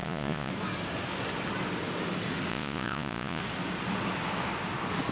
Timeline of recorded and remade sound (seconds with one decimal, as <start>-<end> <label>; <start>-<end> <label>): 0.0-0.5 remade; 0.5-2.5 recorded; 2.5-3.4 remade; 3.4-5.1 recorded